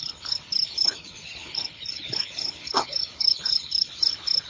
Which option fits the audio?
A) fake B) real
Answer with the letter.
A